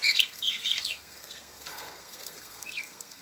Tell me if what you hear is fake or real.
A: fake